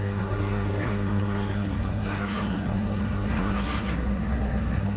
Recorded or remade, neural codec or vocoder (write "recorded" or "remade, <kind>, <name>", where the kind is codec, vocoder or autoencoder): remade, codec, SNAC